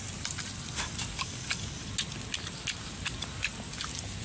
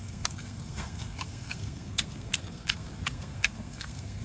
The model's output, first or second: second